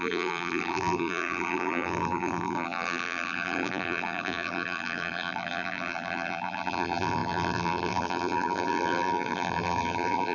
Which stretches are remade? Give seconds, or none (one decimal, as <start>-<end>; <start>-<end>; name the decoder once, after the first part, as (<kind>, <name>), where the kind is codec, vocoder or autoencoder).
0.0-10.3 (vocoder, BigVGAN v2)